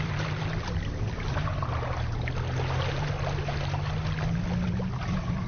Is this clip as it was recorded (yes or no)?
yes